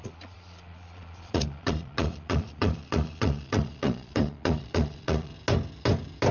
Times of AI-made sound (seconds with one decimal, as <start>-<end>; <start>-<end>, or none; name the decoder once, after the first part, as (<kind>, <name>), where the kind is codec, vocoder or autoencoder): 0.0-5.3 (vocoder, Vocos)